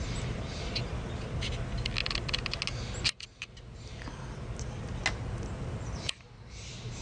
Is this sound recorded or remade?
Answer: recorded